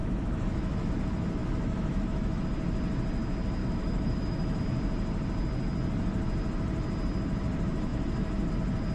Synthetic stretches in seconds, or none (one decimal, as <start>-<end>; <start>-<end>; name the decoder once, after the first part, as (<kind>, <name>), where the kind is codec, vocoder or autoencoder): 0.0-0.9 (autoencoder, DAC-VAE); 1.4-2.4; 3.6-4.6